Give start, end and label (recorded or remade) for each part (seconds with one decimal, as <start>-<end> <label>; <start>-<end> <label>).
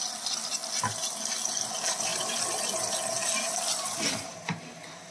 0.0-5.1 recorded